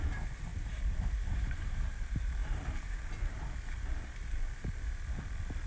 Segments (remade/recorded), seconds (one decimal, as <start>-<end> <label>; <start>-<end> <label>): 0.0-0.5 recorded; 0.5-1.9 remade; 1.9-2.4 recorded; 2.4-3.0 remade; 3.0-5.7 recorded